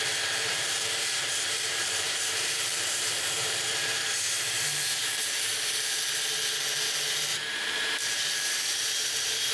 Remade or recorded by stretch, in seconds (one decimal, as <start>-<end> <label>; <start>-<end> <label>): 0.0-0.5 recorded; 0.5-5.7 remade; 5.7-7.3 recorded; 7.3-8.9 remade; 8.9-9.5 recorded